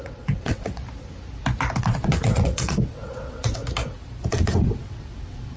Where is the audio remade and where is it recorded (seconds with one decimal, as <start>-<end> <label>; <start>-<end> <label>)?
0.0-0.8 remade; 0.8-1.8 recorded; 1.8-3.6 remade; 3.6-4.3 recorded; 4.3-5.6 remade